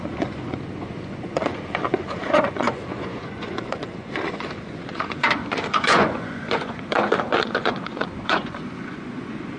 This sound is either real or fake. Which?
fake